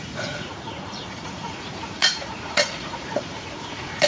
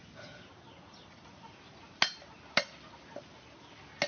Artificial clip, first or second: first